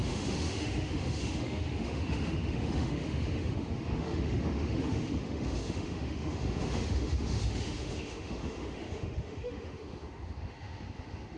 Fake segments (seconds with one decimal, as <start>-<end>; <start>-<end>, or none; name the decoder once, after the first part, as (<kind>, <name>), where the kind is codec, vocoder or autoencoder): 0.0-11.4 (autoencoder, DAC-VAE)